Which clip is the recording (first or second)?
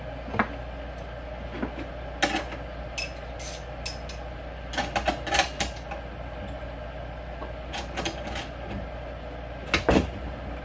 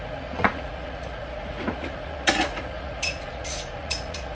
first